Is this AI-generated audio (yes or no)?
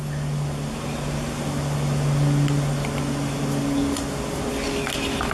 no